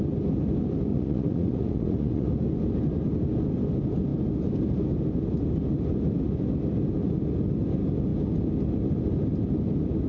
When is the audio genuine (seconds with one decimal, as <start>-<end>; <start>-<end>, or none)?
0.0-0.9; 2.3-10.1